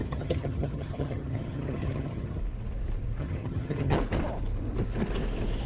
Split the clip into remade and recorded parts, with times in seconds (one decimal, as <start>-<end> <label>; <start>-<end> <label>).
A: 0.0-2.4 remade; 2.4-3.2 recorded; 3.2-4.0 remade; 4.0-5.7 recorded